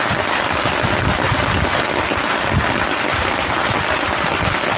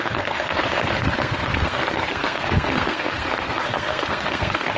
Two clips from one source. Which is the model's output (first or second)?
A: second